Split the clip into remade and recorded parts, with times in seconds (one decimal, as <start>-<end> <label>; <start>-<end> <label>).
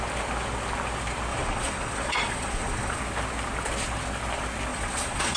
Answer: 0.0-1.3 recorded; 1.3-3.0 remade; 3.0-4.7 recorded; 4.7-5.4 remade